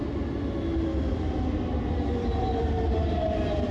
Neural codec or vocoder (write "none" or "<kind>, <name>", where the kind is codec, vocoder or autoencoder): none